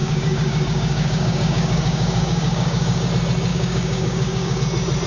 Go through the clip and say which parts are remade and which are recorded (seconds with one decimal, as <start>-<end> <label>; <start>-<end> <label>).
0.0-3.1 remade; 3.1-3.5 recorded; 3.5-4.6 remade; 4.6-5.1 recorded